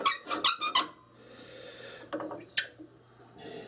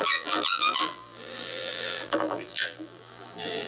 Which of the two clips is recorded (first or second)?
first